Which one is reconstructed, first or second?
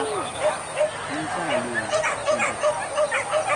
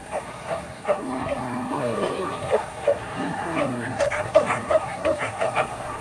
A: second